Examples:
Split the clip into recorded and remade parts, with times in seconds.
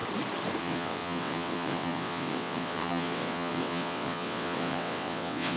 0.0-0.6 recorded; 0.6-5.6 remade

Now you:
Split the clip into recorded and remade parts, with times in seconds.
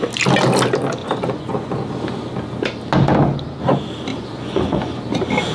0.0-1.0 recorded; 1.0-1.7 remade; 1.7-4.1 recorded; 4.1-5.0 remade; 5.0-5.5 recorded